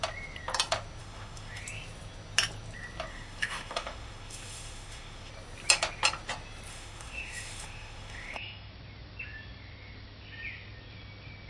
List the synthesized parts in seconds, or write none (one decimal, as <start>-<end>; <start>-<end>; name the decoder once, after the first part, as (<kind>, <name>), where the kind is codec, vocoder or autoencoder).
1.0-1.6 (autoencoder, DAC-VAE); 3.1-5.3; 6.7-8.7